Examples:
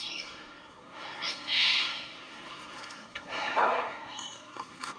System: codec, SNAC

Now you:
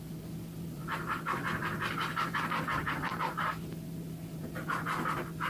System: none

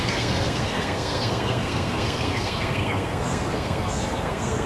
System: codec, SNAC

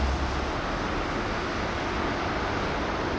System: none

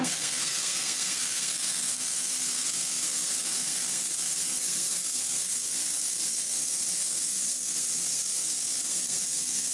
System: codec, SNAC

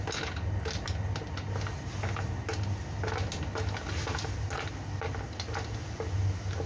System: none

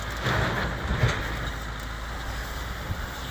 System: none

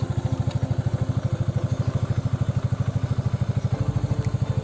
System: none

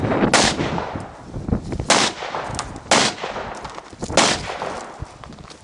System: none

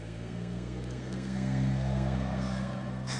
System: codec, SNAC